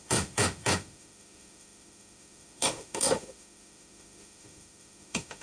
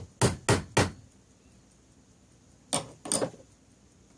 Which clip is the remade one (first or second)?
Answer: first